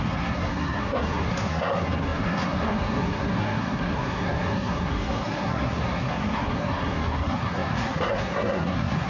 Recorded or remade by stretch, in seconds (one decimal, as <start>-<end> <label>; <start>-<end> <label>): 0.0-9.1 remade